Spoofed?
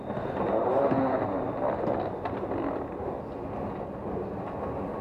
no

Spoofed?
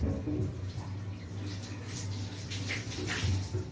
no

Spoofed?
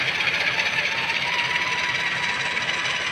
no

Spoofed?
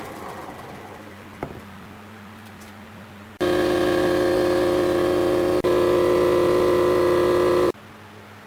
no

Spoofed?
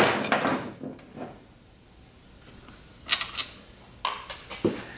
no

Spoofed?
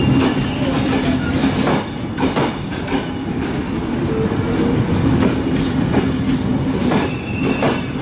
no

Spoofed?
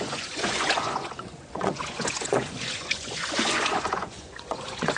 yes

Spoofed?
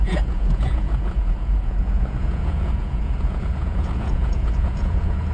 yes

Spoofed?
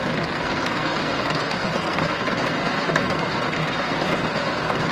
yes